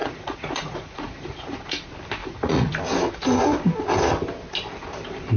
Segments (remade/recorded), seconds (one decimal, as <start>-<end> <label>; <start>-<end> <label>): 0.0-1.6 remade; 1.6-2.2 recorded; 2.2-2.7 remade; 2.7-5.4 recorded